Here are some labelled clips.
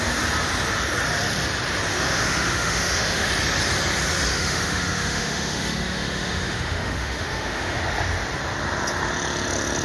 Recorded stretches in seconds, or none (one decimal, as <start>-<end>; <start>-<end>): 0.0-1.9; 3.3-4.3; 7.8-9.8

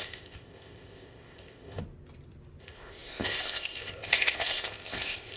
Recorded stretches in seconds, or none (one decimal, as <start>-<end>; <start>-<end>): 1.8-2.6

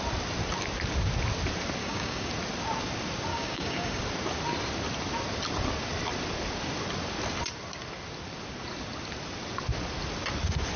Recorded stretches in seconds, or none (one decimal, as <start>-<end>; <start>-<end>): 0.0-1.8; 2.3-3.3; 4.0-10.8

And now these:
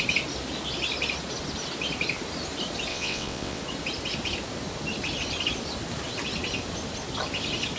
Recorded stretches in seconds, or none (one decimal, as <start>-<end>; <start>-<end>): 0.0-2.9; 3.6-7.8

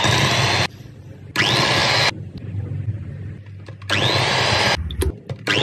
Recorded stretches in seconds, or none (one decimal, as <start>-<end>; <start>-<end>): 0.0-5.6